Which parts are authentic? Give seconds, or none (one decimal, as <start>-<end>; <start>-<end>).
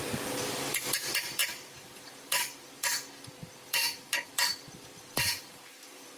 none